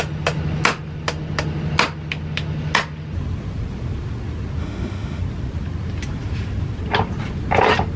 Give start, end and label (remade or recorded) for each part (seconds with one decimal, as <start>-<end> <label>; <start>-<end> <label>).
0.0-4.6 recorded; 4.6-5.2 remade; 5.2-8.0 recorded